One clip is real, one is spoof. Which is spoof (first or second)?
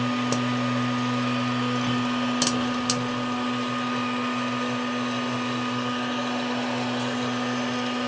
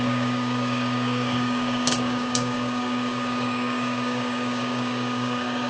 second